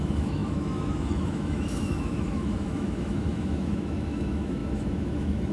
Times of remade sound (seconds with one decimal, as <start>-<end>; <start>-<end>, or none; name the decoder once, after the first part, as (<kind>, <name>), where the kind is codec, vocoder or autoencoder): 0.0-5.5 (autoencoder, DAC-VAE)